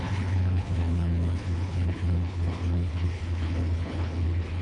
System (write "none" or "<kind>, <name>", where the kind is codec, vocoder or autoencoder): codec, HILCodec